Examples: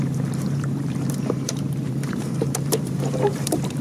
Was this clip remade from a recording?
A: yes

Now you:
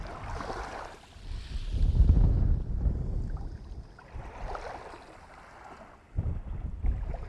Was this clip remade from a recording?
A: no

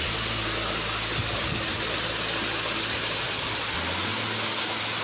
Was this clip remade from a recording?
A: no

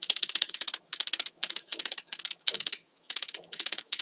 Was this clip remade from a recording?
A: yes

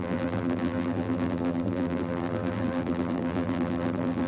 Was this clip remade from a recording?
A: yes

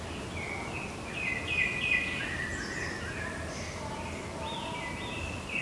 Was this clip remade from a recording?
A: no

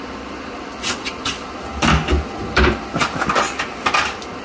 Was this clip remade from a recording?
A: no